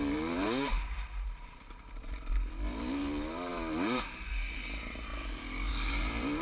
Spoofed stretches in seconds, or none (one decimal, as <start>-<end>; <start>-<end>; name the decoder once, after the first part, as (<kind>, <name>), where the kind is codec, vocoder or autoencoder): 0.0-5.1 (vocoder, BigVGAN v2); 5.7-6.4